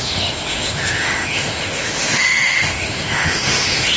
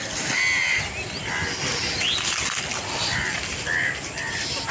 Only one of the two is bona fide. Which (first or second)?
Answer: second